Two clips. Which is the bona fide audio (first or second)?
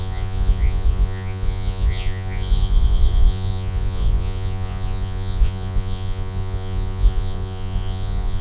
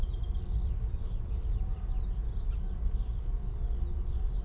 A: second